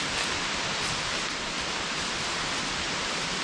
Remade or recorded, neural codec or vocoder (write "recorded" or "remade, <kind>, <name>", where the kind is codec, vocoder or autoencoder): recorded